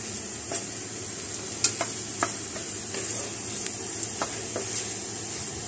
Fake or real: real